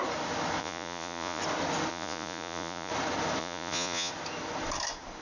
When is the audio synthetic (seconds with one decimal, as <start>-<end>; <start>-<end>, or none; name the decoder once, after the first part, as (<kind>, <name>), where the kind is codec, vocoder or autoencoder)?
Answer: 0.6-1.4 (vocoder, Vocos); 1.9-2.9; 3.4-4.1